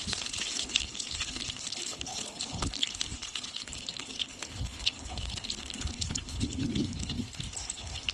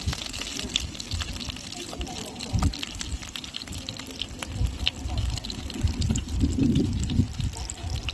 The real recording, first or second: second